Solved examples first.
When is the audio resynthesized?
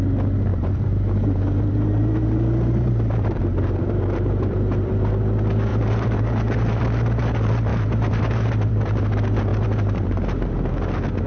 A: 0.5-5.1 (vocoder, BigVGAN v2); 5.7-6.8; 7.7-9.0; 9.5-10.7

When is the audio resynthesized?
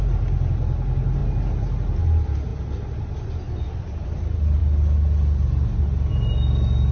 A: none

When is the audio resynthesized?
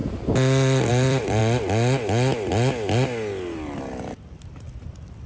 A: 0.9-1.4 (vocoder, BigVGAN v2); 3.8-5.3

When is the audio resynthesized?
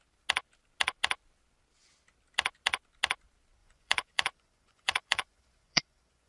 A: 3.6-6.3 (vocoder, Vocos)